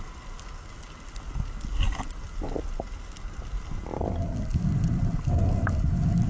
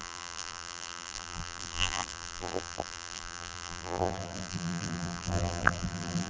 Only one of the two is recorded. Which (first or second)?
first